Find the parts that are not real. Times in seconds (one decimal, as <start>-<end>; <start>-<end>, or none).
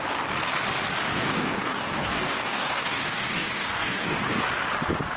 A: 1.1-4.2